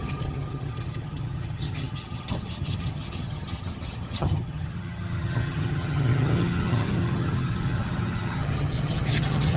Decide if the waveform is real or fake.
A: fake